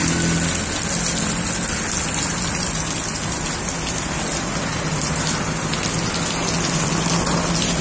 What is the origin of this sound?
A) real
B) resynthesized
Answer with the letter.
A